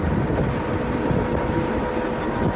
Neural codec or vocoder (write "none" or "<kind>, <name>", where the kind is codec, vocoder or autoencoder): none